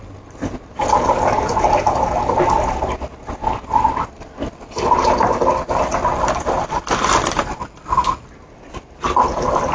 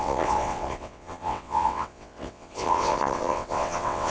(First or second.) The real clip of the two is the first